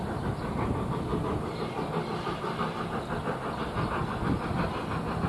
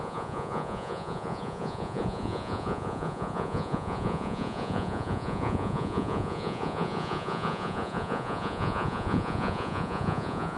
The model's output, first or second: second